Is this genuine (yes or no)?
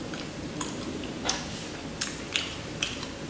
yes